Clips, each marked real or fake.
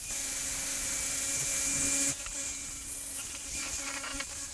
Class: real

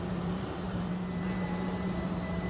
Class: fake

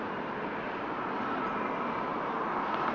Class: real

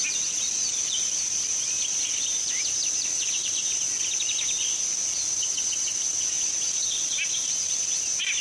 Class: real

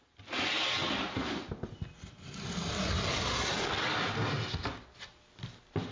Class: real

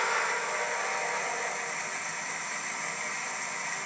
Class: real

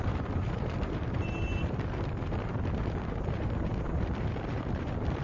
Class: fake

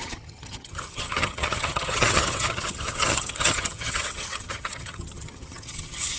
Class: fake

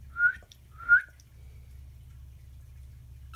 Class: real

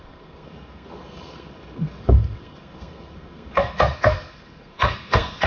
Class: fake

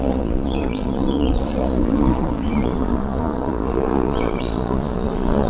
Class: fake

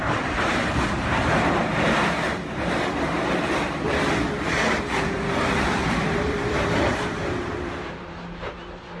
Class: fake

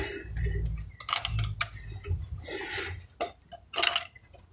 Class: real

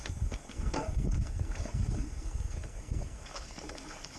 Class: fake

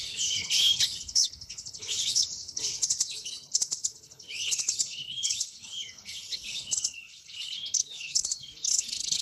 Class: fake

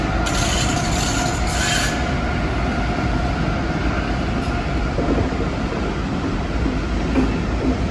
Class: real